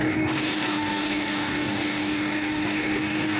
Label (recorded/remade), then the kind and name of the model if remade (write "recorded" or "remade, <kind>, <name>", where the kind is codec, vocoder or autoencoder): remade, codec, DAC